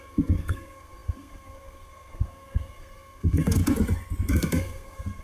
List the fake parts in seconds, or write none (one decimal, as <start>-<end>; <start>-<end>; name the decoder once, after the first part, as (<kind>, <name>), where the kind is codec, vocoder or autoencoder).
0.0-3.6 (codec, SNAC); 4.3-5.2